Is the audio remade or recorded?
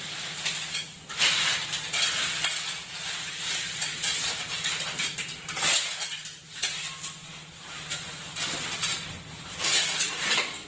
recorded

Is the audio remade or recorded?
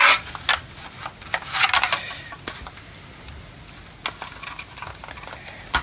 recorded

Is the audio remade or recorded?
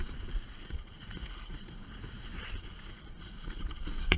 remade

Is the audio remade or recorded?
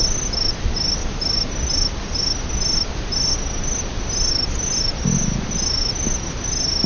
recorded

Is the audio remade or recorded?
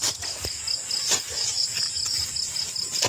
recorded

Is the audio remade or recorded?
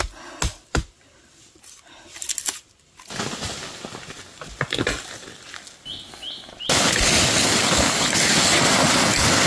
recorded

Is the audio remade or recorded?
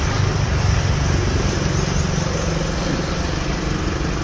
recorded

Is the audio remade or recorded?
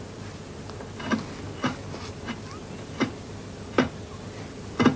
recorded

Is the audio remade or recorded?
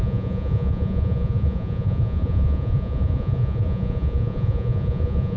remade